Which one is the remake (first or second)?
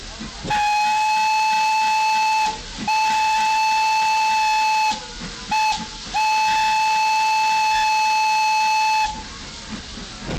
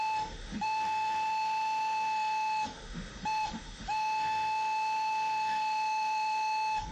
second